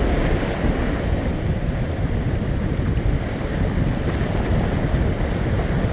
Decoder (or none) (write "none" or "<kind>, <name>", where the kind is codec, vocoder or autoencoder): none